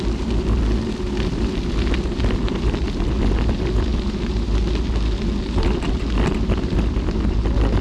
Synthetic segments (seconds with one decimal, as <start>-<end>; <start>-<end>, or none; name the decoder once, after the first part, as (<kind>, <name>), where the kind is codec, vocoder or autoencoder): none